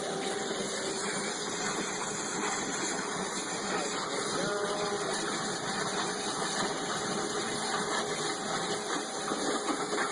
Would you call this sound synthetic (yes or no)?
no